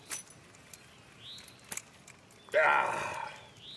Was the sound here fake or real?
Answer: real